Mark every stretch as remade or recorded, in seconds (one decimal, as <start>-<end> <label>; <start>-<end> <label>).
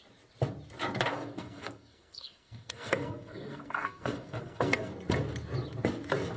0.0-1.1 recorded; 1.1-4.9 remade; 4.9-6.4 recorded